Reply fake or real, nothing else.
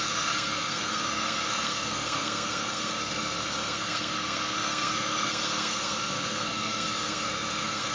fake